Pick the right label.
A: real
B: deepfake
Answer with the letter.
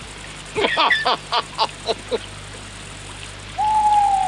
A